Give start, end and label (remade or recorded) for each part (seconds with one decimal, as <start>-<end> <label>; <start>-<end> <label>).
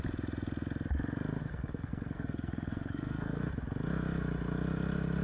0.0-1.4 recorded; 1.4-3.5 remade; 3.5-5.2 recorded